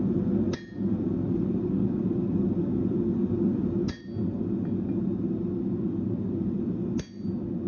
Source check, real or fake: real